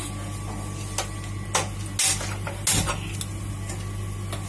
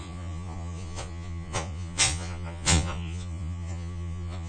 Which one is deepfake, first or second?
second